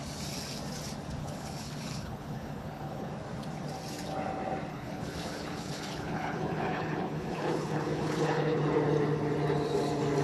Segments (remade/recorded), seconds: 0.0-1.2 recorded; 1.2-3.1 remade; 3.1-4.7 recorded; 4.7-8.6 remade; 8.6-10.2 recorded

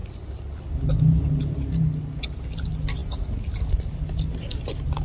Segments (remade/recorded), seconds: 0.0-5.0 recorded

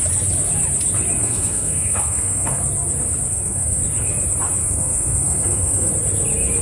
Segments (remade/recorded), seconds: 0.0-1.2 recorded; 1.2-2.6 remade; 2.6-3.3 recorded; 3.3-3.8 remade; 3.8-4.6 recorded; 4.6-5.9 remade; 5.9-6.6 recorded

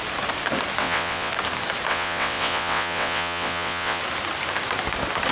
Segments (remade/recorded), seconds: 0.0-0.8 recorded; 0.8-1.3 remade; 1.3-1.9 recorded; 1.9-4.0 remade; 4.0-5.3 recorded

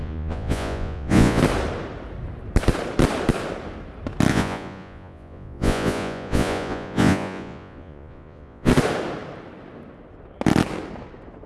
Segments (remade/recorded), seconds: 0.0-1.4 remade; 1.4-4.3 recorded; 4.3-8.7 remade; 8.7-11.5 recorded

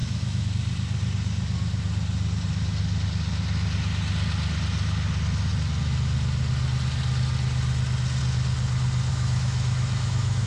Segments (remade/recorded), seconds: 0.0-0.5 remade; 0.5-9.1 recorded; 9.1-10.5 remade

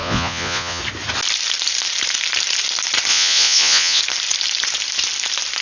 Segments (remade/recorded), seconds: 0.0-0.8 remade; 0.8-3.1 recorded; 3.1-4.0 remade; 4.0-5.6 recorded